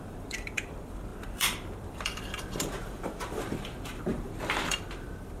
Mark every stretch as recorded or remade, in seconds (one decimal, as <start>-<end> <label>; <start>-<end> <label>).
0.0-5.4 remade